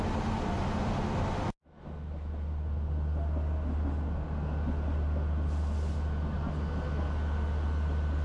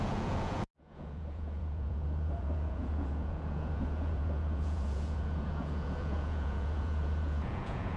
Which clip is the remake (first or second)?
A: second